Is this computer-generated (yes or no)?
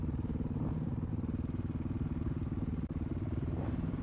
yes